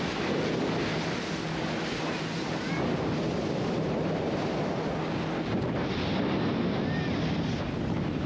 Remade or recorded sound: recorded